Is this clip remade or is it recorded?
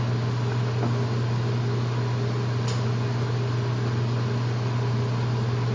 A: recorded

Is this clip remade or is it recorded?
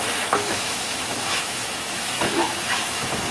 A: remade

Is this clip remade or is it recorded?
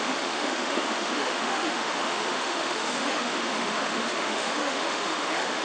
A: remade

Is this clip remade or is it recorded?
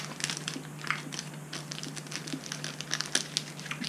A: recorded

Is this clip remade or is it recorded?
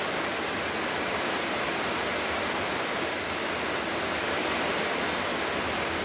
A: recorded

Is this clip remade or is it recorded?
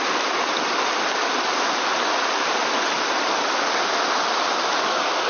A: remade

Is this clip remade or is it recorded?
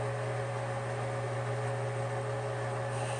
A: recorded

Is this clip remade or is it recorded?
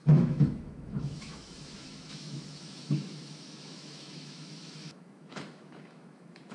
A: remade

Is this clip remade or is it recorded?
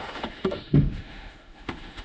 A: remade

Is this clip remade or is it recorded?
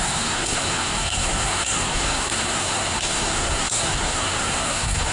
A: remade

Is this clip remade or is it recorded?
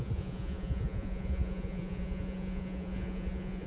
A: remade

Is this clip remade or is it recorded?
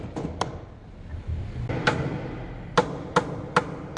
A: recorded